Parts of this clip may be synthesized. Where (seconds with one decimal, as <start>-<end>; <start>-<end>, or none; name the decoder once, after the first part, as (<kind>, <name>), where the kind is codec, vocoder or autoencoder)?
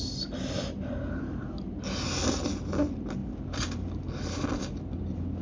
none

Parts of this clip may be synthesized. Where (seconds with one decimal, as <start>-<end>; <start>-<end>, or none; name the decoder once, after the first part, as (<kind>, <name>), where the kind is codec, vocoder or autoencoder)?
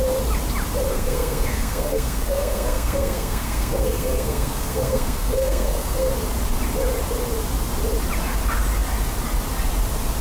0.9-6.1 (codec, SNAC)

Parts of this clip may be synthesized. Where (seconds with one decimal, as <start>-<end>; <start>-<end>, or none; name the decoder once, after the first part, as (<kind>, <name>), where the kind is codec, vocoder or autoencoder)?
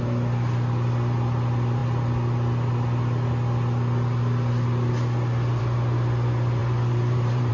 6.6-7.5 (vocoder, BigVGAN v2)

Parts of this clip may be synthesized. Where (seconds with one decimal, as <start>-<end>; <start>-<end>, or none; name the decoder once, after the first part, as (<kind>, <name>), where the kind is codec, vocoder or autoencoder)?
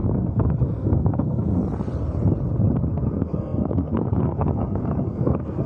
0.0-1.6 (codec, SNAC); 2.9-5.7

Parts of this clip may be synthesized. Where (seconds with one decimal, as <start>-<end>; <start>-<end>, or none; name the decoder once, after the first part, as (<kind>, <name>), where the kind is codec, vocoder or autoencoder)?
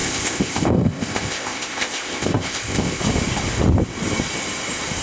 0.0-3.0 (codec, ZipCodec)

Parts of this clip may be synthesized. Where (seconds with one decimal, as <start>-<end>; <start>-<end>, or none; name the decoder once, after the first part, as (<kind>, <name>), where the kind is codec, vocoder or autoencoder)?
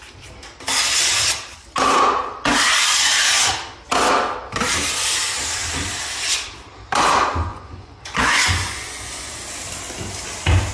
7.5-9.3 (vocoder, Vocos)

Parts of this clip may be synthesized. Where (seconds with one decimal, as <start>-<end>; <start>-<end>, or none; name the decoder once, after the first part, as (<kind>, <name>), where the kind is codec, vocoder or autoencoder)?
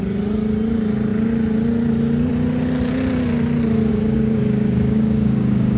3.9-5.8 (codec, DAC)